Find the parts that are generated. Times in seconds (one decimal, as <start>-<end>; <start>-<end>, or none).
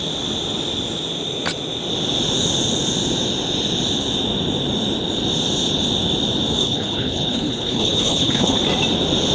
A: 6.6-8.6